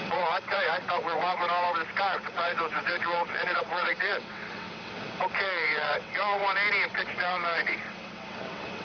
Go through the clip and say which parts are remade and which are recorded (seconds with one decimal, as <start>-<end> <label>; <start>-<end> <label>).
0.0-1.4 remade; 1.4-2.0 recorded; 2.0-6.4 remade; 6.4-6.9 recorded; 6.9-8.8 remade